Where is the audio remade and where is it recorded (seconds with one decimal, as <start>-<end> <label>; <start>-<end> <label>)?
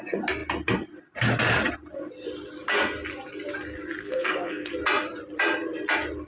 0.0-4.0 recorded; 4.0-4.7 remade; 4.7-6.3 recorded